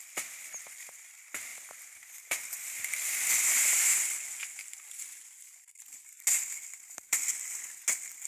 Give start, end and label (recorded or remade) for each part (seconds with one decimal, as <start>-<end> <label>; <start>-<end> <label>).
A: 0.0-8.3 recorded